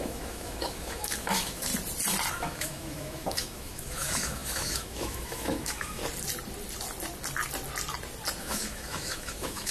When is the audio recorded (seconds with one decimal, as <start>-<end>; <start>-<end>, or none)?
1.7-2.3; 6.0-8.4